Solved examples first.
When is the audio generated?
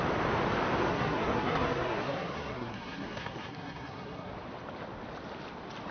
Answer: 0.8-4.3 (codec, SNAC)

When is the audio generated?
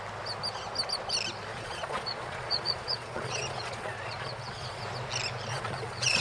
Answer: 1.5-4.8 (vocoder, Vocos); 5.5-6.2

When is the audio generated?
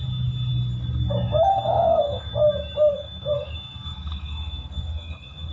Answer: 1.5-2.3 (codec, SNAC); 2.9-5.5